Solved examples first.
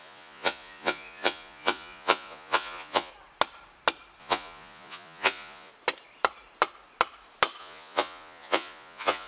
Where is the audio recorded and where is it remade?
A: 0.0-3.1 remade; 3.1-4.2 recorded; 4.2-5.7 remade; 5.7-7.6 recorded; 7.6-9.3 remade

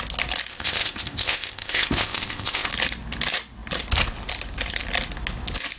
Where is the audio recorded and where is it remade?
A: 0.0-0.5 recorded; 0.5-2.7 remade; 2.7-5.8 recorded

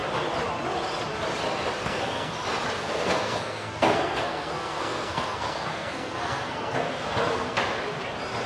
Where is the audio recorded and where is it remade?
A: 0.0-1.8 recorded; 1.8-2.3 remade; 2.3-2.8 recorded; 2.8-7.6 remade; 7.6-8.5 recorded

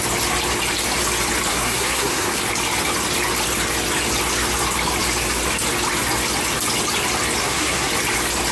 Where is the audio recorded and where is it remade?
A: 0.0-1.5 recorded; 1.5-2.4 remade; 2.4-7.4 recorded; 7.4-7.9 remade; 7.9-8.5 recorded

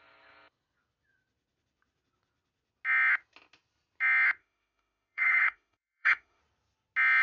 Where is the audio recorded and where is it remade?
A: 0.0-4.4 recorded; 4.4-6.4 remade; 6.4-7.2 recorded